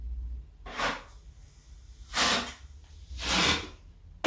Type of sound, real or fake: real